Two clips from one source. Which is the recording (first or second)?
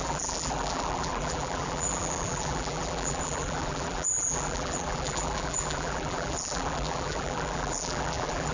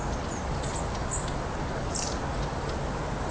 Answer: second